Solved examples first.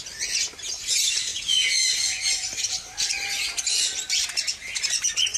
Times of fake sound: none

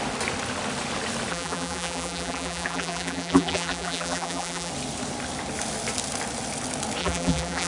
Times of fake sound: 1.3-4.7; 7.0-7.7